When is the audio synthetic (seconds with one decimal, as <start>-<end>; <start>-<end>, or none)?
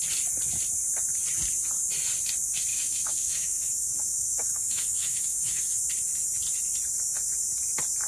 2.7-5.8